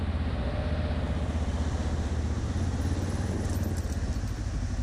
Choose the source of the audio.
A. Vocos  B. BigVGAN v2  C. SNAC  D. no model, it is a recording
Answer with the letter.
D